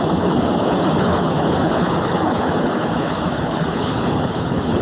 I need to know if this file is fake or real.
fake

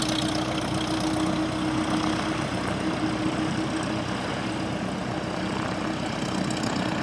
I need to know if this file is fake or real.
real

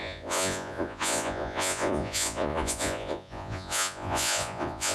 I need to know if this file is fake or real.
fake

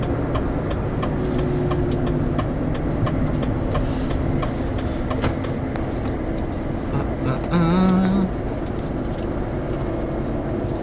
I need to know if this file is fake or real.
real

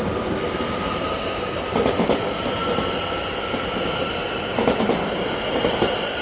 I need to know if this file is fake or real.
real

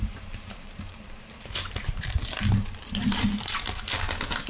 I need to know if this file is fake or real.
fake